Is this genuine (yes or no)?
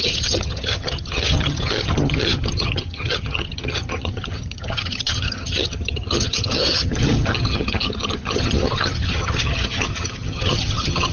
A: no